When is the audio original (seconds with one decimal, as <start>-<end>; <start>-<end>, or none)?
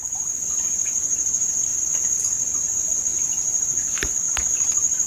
0.0-5.1